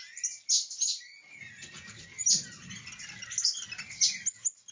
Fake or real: real